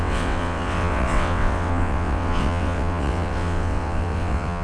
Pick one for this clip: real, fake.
fake